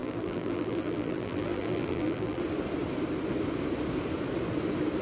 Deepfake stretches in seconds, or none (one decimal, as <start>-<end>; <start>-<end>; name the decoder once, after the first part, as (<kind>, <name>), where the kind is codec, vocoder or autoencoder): 0.0-2.4 (vocoder, BigVGAN v2)